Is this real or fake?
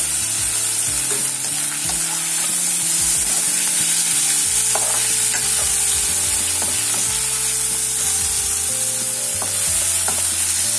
real